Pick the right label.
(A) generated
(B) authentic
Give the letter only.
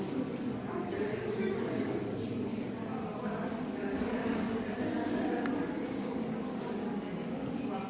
A